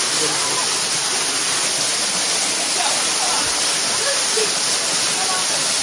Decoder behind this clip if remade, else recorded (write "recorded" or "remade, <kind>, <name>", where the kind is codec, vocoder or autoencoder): recorded